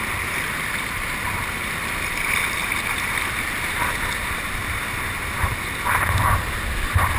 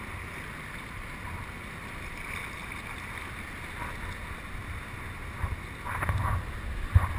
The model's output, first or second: first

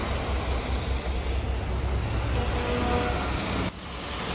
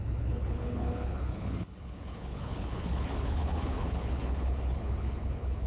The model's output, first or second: second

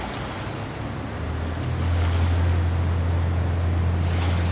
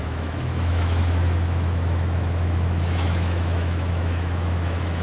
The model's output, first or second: second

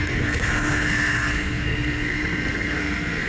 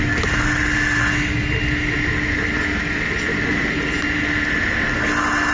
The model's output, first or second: first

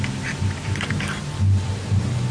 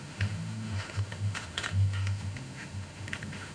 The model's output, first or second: second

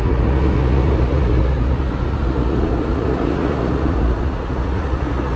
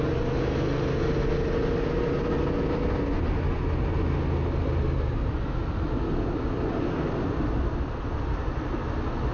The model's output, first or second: first